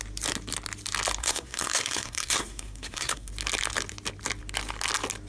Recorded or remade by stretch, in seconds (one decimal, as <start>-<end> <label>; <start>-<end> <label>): 0.0-1.2 recorded; 1.2-3.3 remade; 3.3-5.3 recorded